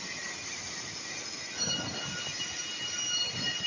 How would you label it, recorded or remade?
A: recorded